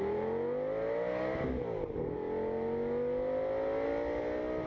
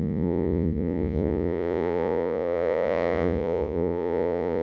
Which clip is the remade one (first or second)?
second